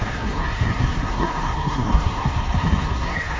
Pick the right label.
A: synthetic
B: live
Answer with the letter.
A